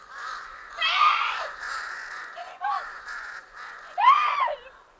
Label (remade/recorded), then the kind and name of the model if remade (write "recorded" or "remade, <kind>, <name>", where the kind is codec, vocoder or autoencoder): remade, vocoder, Vocos